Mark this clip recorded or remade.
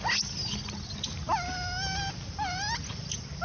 recorded